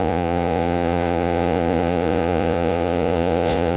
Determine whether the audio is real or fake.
fake